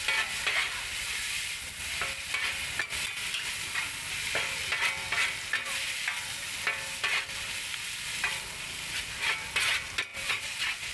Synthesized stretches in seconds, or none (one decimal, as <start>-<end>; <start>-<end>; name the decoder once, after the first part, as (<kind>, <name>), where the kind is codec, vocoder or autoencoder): 10.1-10.9 (vocoder, Vocos)